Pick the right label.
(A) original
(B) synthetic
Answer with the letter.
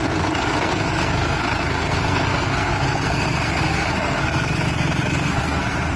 B